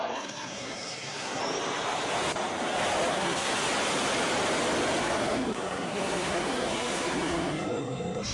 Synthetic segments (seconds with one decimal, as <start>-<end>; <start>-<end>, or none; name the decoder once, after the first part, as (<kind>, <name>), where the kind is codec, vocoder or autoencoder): 0.0-1.4 (codec, SNAC); 3.1-3.5; 5.0-8.3